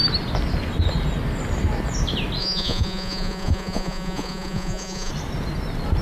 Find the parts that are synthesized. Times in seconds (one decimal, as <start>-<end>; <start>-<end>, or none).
2.4-5.1

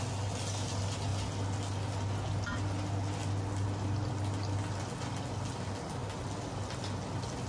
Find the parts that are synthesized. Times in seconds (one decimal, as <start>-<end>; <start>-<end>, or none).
none

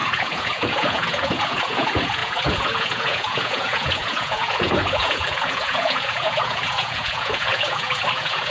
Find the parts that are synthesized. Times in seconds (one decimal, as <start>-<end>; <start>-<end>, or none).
0.0-8.5

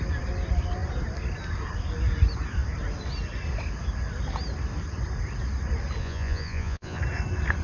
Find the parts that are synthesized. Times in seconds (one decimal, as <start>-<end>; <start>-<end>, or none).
6.0-7.0

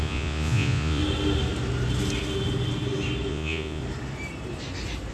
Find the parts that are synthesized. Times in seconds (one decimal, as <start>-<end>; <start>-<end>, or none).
0.0-1.0; 3.3-3.8

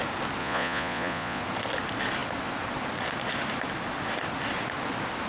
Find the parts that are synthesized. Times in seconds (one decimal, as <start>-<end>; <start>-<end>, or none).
0.4-1.4

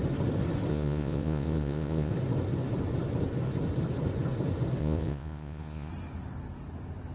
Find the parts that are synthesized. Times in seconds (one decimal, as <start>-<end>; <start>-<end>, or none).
0.7-2.1; 4.8-5.9

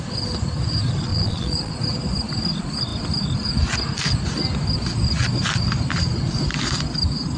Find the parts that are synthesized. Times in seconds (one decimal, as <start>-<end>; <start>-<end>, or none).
1.1-1.7